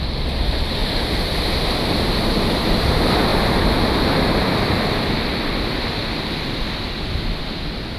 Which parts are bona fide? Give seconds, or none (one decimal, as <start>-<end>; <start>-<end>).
0.0-0.8; 2.0-3.3; 7.4-8.0